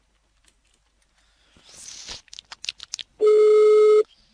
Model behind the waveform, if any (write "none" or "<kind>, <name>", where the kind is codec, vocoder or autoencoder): none